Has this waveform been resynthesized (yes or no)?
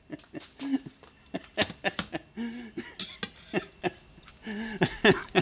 no